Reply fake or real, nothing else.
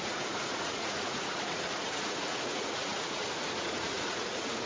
fake